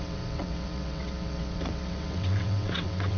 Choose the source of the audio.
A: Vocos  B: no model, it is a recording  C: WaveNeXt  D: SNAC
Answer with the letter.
C